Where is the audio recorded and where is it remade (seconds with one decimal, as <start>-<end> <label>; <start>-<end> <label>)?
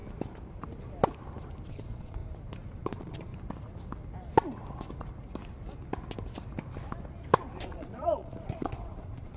0.0-1.7 recorded; 1.7-2.2 remade; 2.2-2.8 recorded; 2.8-3.3 remade; 3.3-7.6 recorded; 7.6-9.4 remade